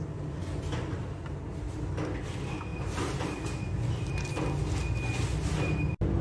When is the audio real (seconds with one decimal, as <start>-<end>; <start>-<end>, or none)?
0.0-2.7; 3.9-6.2